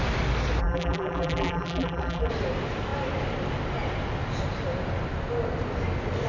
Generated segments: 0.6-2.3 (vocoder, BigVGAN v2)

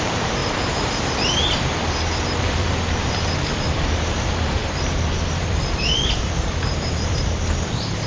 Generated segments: 0.0-0.4 (vocoder, BigVGAN v2); 2.2-8.1

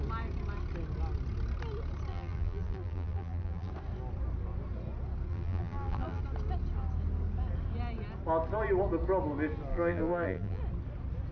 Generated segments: 2.1-3.7 (vocoder, BigVGAN v2); 5.3-6.2; 9.7-10.6

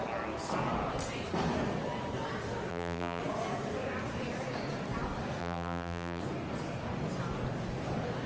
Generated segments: 2.7-3.2 (vocoder, BigVGAN v2); 5.4-6.2

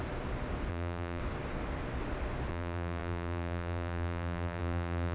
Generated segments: 0.7-1.2 (vocoder, BigVGAN v2); 2.5-5.1

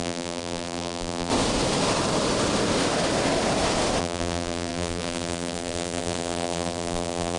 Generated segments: 0.0-1.3 (vocoder, BigVGAN v2); 4.0-7.4

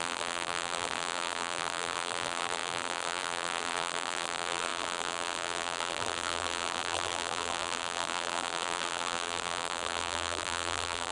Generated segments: 0.0-11.1 (vocoder, BigVGAN v2)

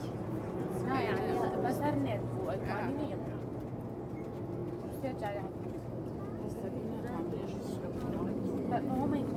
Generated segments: none